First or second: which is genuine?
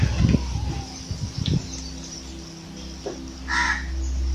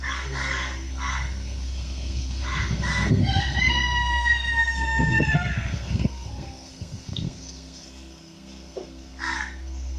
first